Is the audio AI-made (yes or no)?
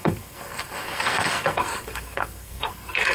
yes